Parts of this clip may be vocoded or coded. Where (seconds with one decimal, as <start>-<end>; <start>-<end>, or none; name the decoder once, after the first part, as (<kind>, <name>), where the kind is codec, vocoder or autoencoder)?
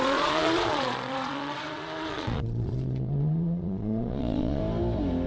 0.0-4.6 (vocoder, Vocos)